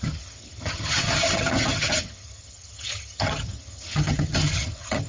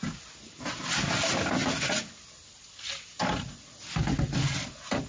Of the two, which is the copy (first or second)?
first